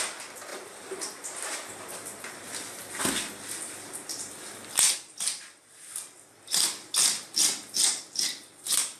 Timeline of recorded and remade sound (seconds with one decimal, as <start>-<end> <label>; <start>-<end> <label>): 0.0-0.5 recorded; 0.5-3.0 remade; 3.0-9.0 recorded